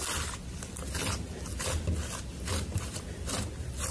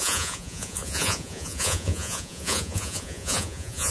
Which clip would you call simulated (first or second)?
second